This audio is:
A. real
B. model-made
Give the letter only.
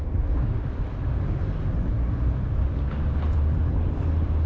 A